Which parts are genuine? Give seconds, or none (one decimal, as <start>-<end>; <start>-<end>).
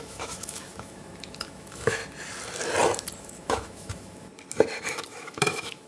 2.0-3.2; 4.3-4.8